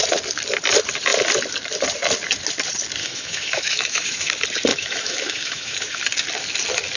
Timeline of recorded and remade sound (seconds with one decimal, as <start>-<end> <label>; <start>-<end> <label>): 0.0-3.0 recorded; 3.0-4.3 remade; 4.3-4.7 recorded; 4.7-6.0 remade; 6.0-7.0 recorded